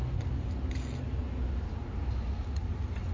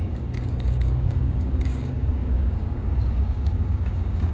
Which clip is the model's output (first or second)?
second